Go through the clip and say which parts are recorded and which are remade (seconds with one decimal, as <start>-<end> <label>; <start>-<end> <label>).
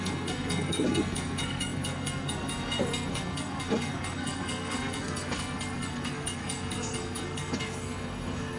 0.0-8.6 remade